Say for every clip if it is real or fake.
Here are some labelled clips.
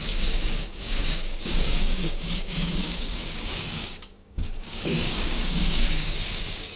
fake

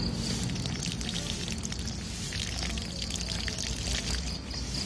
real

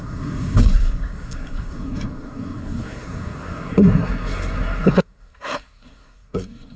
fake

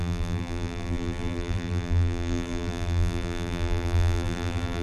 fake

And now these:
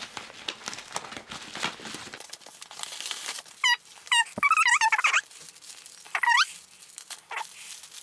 real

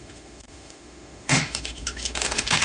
fake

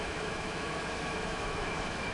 fake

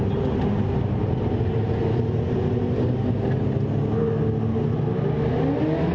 real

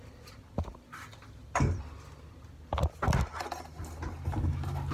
real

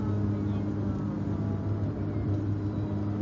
real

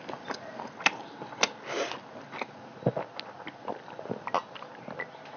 real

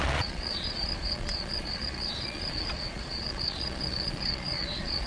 fake